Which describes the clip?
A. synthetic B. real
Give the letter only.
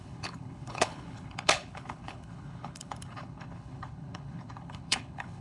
A